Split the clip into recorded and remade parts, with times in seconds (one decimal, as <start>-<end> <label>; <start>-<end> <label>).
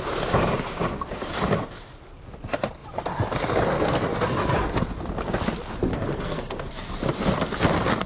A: 0.0-5.9 recorded; 5.9-6.7 remade; 6.7-8.1 recorded